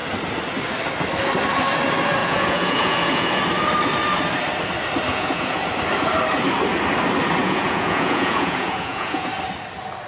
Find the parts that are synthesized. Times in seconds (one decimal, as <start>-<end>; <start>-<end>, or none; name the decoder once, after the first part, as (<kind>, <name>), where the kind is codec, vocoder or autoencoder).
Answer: 2.2-3.4 (vocoder, Vocos); 5.1-5.6; 7.4-9.3